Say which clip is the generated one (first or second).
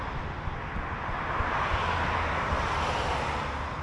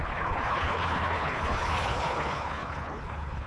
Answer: second